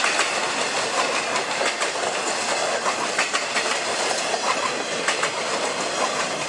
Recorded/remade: recorded